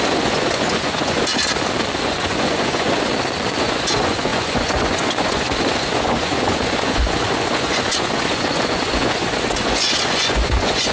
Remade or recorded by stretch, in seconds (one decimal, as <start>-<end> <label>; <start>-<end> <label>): 0.0-1.3 remade; 1.3-2.0 recorded; 2.0-3.1 remade; 3.1-3.6 recorded; 3.6-10.9 remade